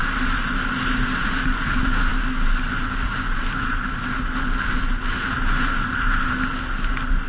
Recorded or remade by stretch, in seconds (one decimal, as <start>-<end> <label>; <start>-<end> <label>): 0.0-7.3 recorded